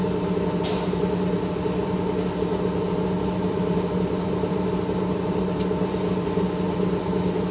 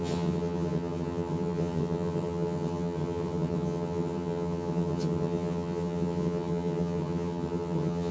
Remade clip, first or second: second